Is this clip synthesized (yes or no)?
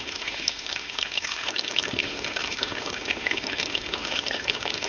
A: yes